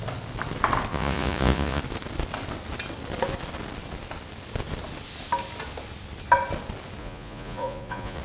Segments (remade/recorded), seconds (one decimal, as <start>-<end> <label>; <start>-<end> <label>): 0.0-0.9 recorded; 0.9-1.8 remade; 1.8-7.0 recorded; 7.0-8.2 remade